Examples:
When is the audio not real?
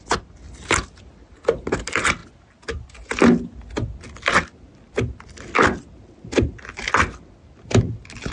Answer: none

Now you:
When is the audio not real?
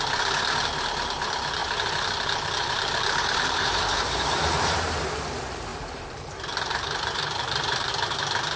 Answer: 1.6-5.0 (vocoder, BigVGAN v2); 5.7-7.9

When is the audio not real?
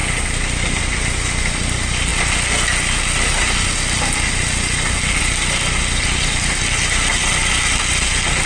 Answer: none